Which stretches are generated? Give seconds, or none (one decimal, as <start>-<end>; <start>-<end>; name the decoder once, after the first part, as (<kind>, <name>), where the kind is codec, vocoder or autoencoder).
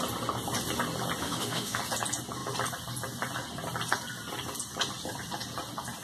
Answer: 1.2-1.8 (autoencoder, DAC-VAE)